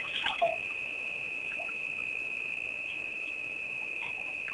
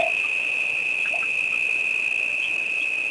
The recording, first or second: second